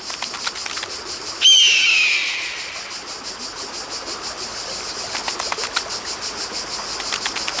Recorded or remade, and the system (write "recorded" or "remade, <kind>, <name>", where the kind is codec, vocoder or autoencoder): recorded